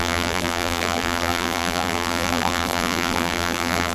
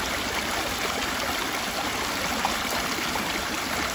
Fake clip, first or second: first